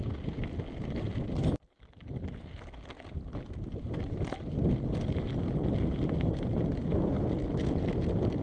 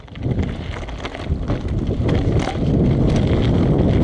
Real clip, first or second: second